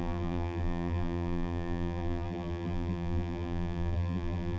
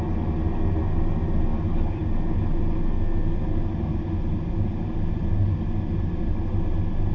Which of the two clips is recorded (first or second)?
second